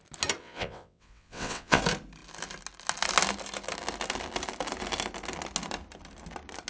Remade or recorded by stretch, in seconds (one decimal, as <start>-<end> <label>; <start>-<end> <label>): 0.0-0.4 recorded; 0.4-1.8 remade; 1.8-6.7 recorded